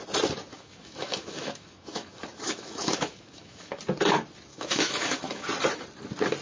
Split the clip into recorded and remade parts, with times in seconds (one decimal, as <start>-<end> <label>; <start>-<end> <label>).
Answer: 0.0-0.5 recorded; 0.5-3.8 remade; 3.8-4.5 recorded; 4.5-5.4 remade; 5.4-6.4 recorded